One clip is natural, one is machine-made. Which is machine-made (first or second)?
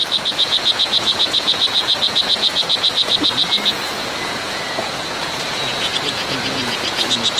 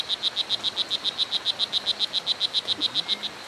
first